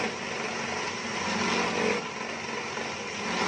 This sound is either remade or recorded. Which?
recorded